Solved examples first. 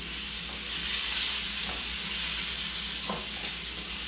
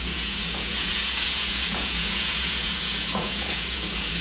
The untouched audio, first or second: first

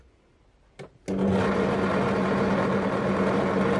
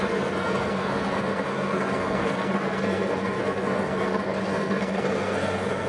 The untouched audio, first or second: first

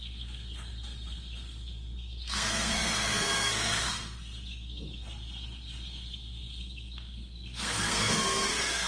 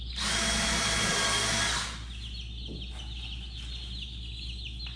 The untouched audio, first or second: second